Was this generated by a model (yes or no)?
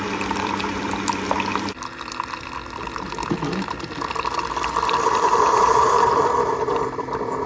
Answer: yes